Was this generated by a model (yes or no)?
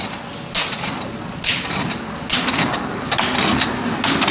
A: no